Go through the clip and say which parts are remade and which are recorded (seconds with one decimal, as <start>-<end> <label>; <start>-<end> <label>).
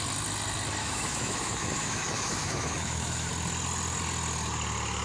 0.0-0.8 recorded; 0.8-3.3 remade; 3.3-5.0 recorded